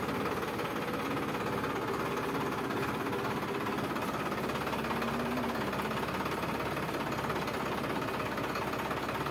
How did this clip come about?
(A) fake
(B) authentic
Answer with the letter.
B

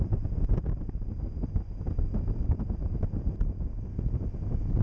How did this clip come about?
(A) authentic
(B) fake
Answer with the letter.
A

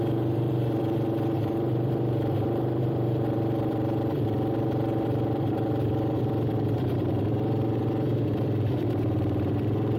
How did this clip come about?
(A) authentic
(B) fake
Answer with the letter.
B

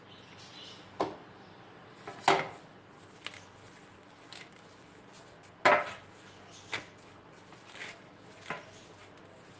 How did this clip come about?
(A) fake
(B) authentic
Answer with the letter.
B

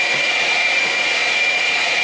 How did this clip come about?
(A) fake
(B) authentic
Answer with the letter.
A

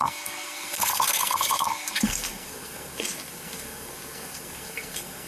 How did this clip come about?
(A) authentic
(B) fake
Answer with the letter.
B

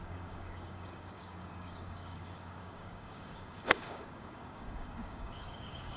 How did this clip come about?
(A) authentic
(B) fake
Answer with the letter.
B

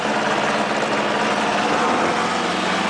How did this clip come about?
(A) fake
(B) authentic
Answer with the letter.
B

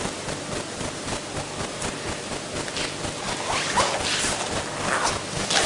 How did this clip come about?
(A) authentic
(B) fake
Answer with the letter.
A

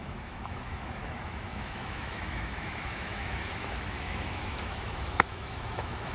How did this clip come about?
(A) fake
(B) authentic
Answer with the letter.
A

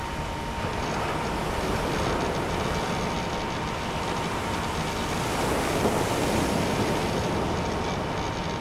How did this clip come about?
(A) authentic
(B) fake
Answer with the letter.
A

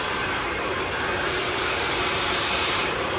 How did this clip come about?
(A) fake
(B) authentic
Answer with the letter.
A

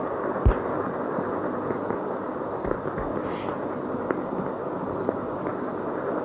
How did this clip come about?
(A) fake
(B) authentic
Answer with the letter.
B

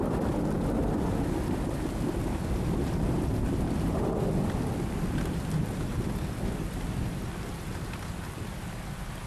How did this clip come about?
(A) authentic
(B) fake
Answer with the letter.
A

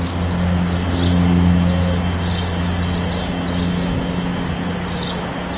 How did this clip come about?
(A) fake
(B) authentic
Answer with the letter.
B